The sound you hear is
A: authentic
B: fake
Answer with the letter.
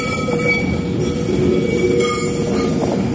A